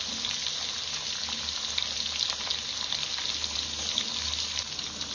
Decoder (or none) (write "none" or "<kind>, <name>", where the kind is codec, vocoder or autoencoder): none